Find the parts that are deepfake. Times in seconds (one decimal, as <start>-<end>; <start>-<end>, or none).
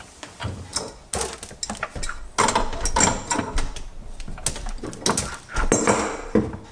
none